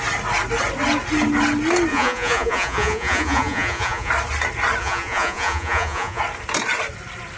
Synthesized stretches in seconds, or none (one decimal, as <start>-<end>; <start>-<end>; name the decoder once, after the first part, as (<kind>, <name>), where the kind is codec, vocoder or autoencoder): 1.9-4.1 (vocoder, Vocos); 4.8-6.2